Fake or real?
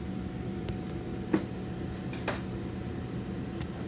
real